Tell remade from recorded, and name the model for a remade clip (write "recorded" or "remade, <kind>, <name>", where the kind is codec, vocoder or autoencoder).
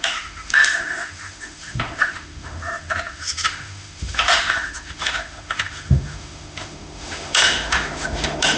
remade, autoencoder, DAC-VAE